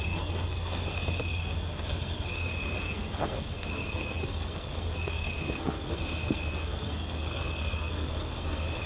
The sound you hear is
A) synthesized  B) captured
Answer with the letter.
A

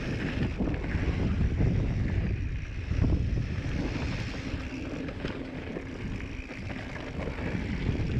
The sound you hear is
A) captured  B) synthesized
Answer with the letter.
A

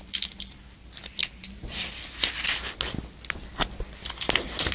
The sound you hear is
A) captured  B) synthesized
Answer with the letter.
A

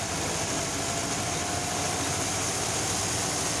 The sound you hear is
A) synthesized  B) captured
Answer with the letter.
B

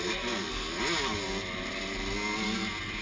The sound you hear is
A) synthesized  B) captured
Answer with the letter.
B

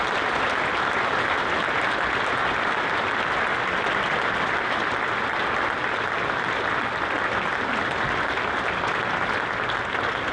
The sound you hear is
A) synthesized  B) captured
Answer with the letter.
B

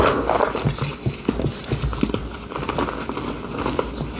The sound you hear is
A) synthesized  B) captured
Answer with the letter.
B